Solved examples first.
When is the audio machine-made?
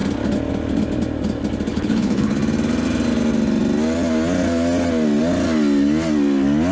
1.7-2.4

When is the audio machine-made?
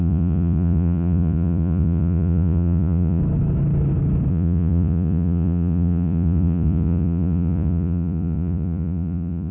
0.0-3.2; 4.3-9.5